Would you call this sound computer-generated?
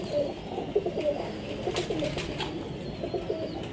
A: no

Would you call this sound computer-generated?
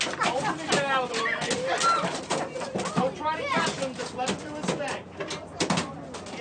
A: no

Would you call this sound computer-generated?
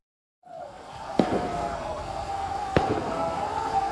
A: yes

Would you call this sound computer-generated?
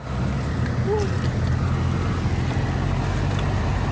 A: no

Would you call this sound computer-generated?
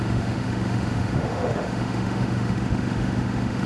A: yes